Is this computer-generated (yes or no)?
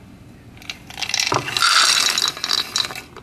no